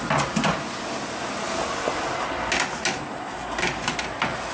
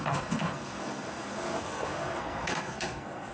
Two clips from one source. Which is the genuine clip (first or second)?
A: first